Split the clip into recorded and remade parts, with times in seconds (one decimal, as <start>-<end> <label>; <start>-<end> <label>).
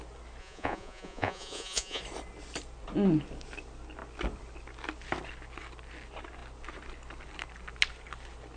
0.0-0.4 recorded; 0.4-2.0 remade; 2.0-8.6 recorded